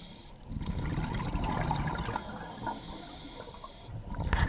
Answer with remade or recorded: recorded